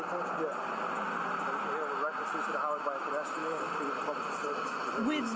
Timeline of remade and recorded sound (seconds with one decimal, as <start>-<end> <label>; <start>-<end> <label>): 0.0-2.1 recorded; 2.1-2.8 remade; 2.8-3.4 recorded; 3.4-4.0 remade; 4.0-5.4 recorded